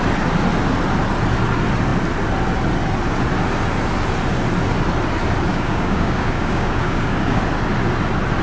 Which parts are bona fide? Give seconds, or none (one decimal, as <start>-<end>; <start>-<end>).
0.0-5.5; 7.4-8.4